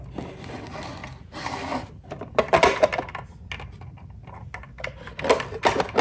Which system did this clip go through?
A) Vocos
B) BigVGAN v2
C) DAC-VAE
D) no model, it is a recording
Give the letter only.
D